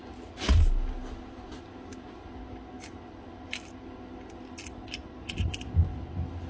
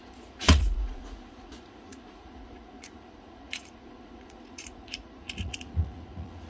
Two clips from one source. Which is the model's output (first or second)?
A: second